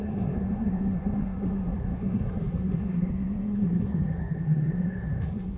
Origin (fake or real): fake